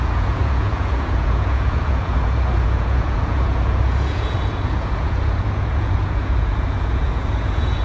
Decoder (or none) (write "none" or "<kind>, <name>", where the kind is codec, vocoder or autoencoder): vocoder, Vocos